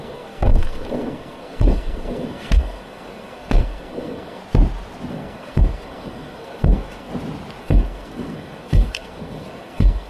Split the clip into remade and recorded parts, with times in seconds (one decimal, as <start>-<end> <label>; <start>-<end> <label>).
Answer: 0.0-4.4 remade; 4.4-5.1 recorded; 5.1-7.1 remade; 7.1-7.6 recorded; 7.6-10.1 remade